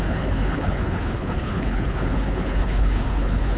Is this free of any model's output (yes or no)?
no